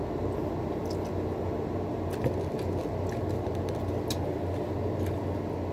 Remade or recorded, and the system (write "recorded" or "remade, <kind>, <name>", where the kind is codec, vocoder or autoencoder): recorded